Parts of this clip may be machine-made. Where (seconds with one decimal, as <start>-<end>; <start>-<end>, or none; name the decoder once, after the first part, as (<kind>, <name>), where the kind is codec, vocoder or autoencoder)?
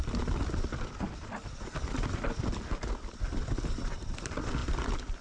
none